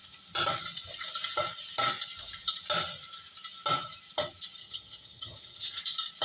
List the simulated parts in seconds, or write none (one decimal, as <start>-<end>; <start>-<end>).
4.6-5.8